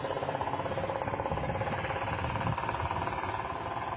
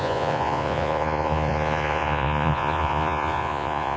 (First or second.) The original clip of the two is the first